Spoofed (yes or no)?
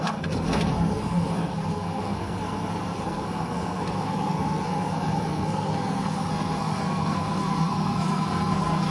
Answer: yes